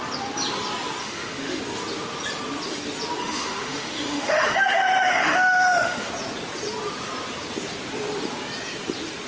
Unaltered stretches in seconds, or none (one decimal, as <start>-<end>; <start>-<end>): 0.0-1.0; 1.6-3.2; 6.1-9.3